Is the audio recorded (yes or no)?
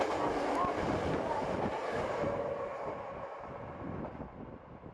yes